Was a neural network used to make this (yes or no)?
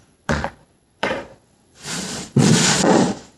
yes